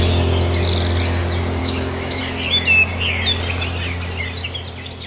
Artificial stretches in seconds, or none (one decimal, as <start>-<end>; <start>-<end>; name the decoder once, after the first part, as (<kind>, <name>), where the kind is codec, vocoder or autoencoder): 1.6-2.2 (autoencoder, DAC-VAE)